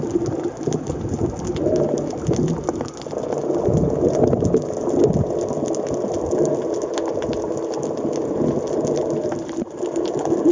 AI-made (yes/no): no